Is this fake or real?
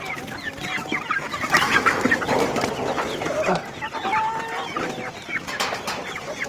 real